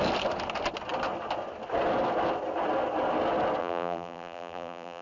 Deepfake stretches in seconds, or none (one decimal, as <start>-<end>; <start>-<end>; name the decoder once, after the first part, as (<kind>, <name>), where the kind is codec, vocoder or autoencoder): 3.6-5.0 (vocoder, BigVGAN v2)